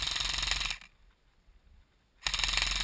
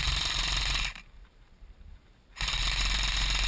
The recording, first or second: first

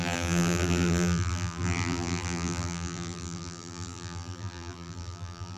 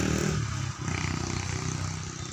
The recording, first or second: second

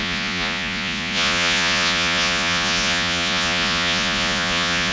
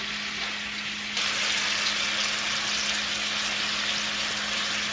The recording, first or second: second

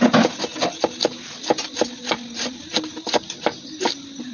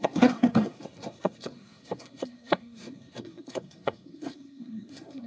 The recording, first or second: first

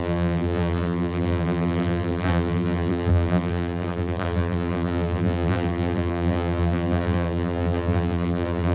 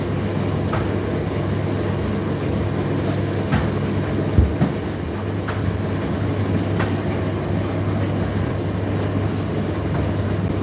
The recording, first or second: second